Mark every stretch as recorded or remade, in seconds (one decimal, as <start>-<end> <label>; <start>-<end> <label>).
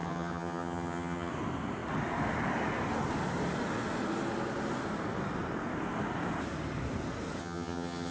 0.0-1.3 remade; 1.3-7.4 recorded; 7.4-8.1 remade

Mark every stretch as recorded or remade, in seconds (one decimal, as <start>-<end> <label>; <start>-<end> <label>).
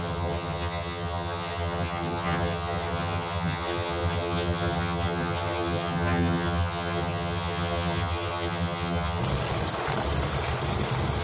0.0-9.2 remade; 9.2-11.2 recorded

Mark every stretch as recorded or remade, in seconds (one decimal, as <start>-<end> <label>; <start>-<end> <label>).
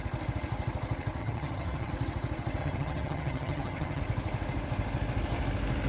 0.0-1.2 recorded; 1.2-1.9 remade; 1.9-2.6 recorded; 2.6-4.0 remade; 4.0-5.9 recorded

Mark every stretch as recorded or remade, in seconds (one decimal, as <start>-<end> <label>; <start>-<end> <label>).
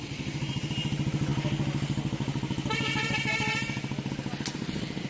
0.0-5.1 recorded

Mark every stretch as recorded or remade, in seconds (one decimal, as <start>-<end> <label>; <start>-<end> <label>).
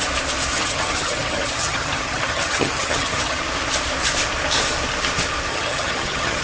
0.0-0.5 recorded; 0.5-3.4 remade; 3.4-5.5 recorded; 5.5-6.4 remade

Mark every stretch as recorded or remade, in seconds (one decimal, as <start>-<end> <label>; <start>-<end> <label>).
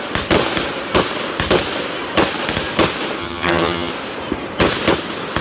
0.0-3.2 recorded; 3.2-3.9 remade; 3.9-5.4 recorded